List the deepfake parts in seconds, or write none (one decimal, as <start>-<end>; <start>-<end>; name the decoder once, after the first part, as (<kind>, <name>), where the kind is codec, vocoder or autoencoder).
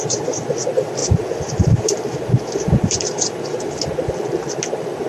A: 1.0-4.1 (vocoder, BigVGAN v2)